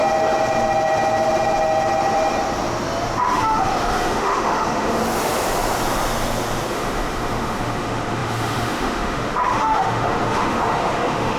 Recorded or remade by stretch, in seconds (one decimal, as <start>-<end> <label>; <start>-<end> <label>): 0.0-3.2 recorded; 3.2-5.0 remade; 5.0-6.7 recorded; 6.7-11.4 remade